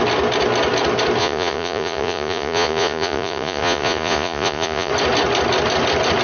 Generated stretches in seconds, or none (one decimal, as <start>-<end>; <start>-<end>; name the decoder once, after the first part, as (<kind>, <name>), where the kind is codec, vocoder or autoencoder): 1.2-4.9 (vocoder, Vocos)